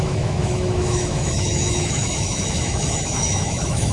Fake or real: fake